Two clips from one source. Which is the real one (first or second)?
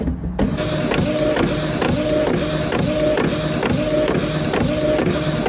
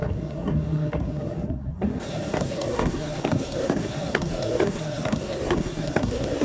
first